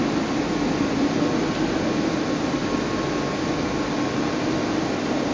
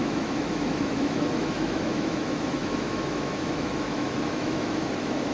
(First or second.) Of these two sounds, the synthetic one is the second